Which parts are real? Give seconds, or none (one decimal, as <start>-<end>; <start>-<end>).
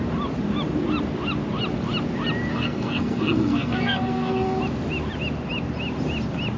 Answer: 0.0-2.5; 4.6-6.6